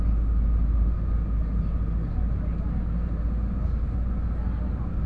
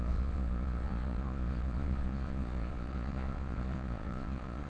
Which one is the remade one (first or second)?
second